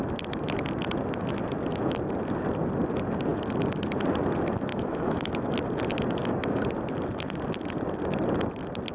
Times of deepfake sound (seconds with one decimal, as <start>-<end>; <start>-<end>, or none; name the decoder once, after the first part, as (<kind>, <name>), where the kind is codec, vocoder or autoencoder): 4.7-5.3 (autoencoder, DAC-VAE)